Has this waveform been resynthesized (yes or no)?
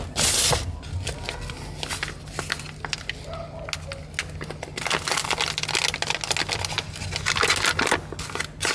no